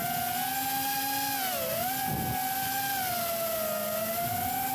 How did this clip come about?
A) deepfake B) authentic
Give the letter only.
B